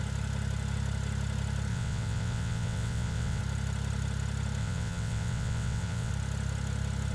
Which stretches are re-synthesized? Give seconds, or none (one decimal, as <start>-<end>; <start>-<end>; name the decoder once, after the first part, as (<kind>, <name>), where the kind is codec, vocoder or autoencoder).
1.7-3.4 (vocoder, WaveNeXt); 4.6-6.1